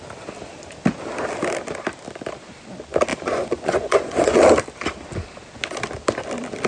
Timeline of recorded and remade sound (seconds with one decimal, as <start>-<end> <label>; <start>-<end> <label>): 0.0-3.1 recorded; 3.1-4.4 remade; 4.4-6.7 recorded